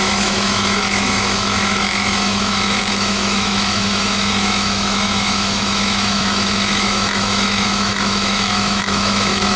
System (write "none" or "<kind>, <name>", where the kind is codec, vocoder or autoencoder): autoencoder, DAC-VAE